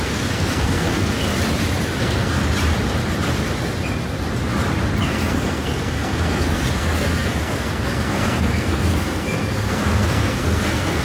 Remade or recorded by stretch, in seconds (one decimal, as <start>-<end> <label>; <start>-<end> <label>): 0.0-1.3 remade; 1.3-2.0 recorded; 2.0-2.4 remade; 2.4-5.0 recorded; 5.0-11.0 remade